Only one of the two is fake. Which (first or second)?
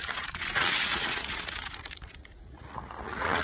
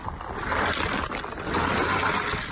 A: first